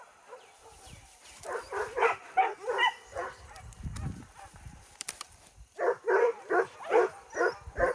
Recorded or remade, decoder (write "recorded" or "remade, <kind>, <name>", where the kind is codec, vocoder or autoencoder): remade, vocoder, BigVGAN v2